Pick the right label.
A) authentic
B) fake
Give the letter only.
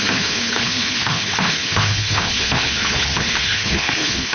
B